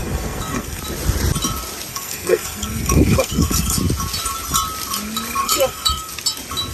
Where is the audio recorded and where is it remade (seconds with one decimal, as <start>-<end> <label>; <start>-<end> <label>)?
0.0-0.8 remade; 0.8-1.9 recorded; 1.9-3.8 remade; 3.8-5.4 recorded; 5.4-6.1 remade; 6.1-6.7 recorded